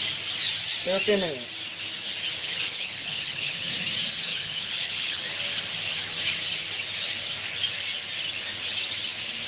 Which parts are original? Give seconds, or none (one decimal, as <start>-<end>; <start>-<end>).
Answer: 0.0-2.4; 3.7-4.3; 5.2-9.5